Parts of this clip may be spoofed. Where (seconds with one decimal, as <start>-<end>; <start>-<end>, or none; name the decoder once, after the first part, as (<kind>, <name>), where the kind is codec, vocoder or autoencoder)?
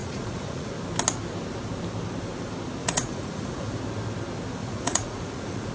0.0-0.7 (vocoder, Vocos); 2.8-3.8; 4.6-5.7